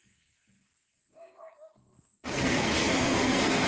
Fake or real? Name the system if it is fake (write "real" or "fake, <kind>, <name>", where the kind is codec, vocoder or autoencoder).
fake, codec, SNAC